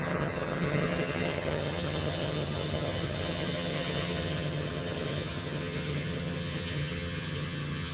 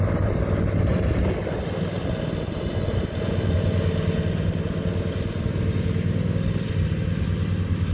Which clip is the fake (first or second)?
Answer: first